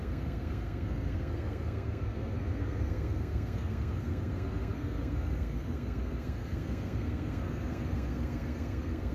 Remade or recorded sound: remade